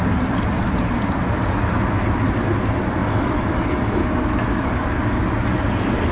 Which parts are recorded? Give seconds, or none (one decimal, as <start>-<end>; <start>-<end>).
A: 0.0-6.1